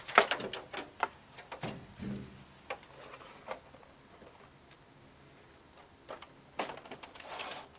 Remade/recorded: recorded